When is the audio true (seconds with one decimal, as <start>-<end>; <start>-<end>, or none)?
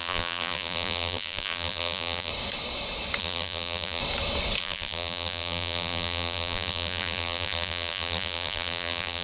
2.3-3.2; 4.0-4.6